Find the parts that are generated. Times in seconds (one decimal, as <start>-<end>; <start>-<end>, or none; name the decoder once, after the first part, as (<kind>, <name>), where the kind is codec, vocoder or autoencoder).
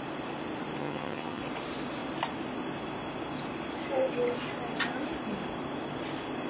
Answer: 0.8-1.4 (vocoder, HiFi-GAN)